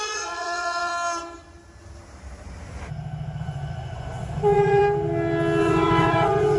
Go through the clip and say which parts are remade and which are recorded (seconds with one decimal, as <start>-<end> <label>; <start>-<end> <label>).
0.0-0.9 remade; 0.9-3.4 recorded; 3.4-4.8 remade; 4.8-5.6 recorded; 5.6-6.6 remade